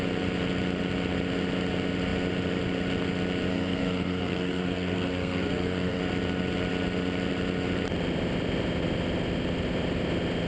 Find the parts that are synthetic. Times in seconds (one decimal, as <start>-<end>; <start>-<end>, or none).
3.5-6.0